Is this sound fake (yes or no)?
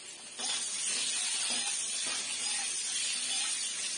no